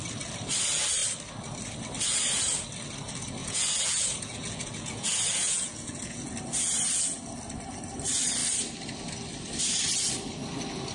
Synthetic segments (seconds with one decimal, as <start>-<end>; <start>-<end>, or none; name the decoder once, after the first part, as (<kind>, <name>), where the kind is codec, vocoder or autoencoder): 3.4-6.3 (vocoder, Vocos)